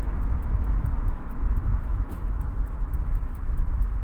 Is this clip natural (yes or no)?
no